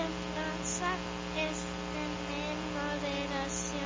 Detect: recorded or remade recorded